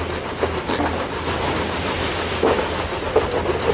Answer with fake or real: real